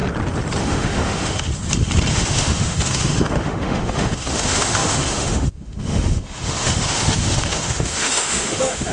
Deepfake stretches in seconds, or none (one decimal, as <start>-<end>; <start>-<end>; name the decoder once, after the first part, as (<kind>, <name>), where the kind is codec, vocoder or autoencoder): 0.6-1.5 (autoencoder, DAC-VAE); 2.1-8.9